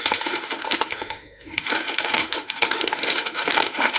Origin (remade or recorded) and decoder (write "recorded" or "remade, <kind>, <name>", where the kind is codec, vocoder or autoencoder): remade, autoencoder, DAC-VAE